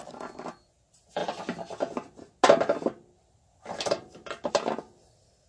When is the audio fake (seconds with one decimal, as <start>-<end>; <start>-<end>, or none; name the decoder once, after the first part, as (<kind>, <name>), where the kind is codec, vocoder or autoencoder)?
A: none